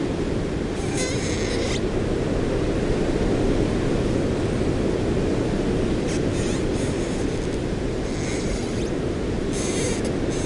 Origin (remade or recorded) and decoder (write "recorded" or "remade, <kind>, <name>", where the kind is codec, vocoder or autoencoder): recorded